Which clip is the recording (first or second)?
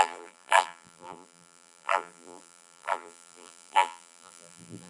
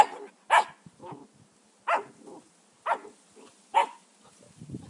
second